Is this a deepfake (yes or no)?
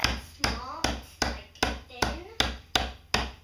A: no